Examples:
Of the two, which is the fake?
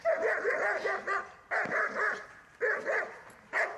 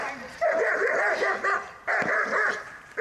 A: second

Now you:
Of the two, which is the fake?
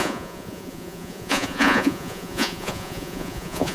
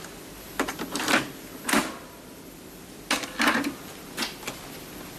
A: first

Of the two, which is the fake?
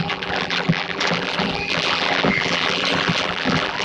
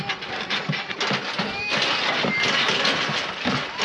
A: first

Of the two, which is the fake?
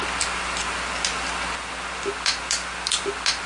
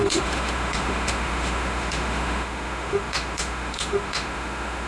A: second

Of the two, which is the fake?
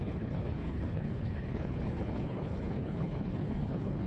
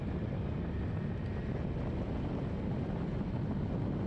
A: first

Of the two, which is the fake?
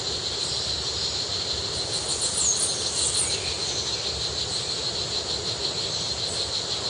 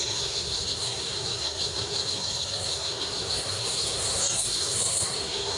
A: second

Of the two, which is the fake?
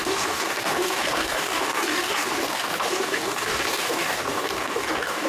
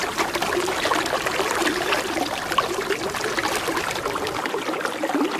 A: first